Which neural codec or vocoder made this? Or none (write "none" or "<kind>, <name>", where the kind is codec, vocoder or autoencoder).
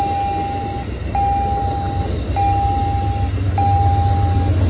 none